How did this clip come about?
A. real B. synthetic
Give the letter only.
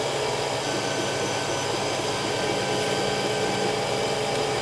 A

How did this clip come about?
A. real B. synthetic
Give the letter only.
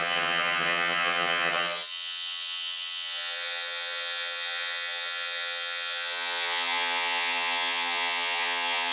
B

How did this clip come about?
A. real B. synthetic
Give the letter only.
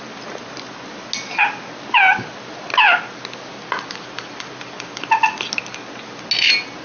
A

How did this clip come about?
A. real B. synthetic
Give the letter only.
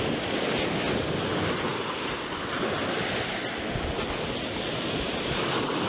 A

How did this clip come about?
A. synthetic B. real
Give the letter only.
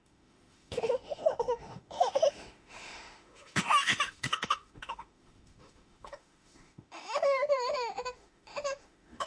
A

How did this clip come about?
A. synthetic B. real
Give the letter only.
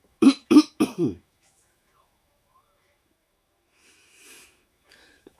A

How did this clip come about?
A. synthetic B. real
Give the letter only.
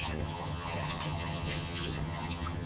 A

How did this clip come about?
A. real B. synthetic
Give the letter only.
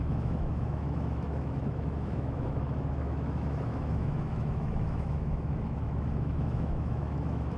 B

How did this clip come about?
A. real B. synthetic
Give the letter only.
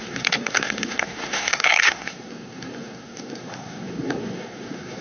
B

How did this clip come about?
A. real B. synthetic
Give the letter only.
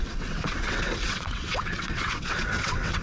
B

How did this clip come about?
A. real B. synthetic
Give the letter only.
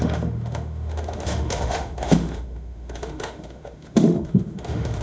B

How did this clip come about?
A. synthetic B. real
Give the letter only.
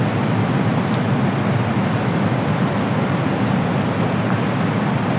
B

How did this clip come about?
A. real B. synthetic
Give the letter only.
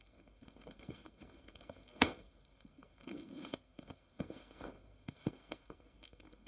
B